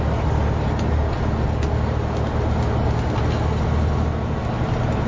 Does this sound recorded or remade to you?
recorded